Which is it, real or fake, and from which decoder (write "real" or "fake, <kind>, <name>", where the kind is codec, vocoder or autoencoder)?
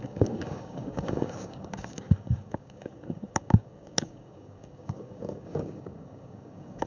fake, codec, DAC